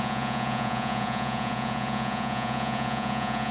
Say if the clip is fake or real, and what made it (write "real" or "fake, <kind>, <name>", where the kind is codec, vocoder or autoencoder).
fake, vocoder, Vocos